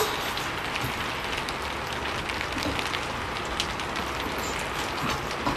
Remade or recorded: recorded